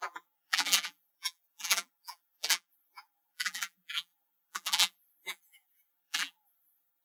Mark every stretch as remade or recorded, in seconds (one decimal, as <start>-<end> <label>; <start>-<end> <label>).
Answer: 0.0-7.0 remade